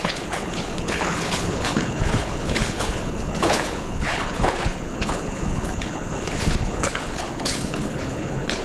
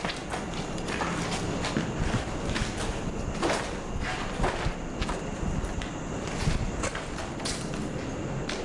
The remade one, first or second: first